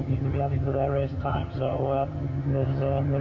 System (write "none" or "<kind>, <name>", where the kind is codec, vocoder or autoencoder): vocoder, HiFi-GAN